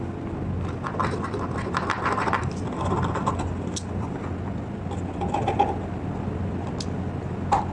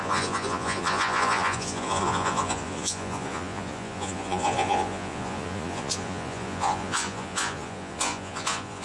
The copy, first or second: second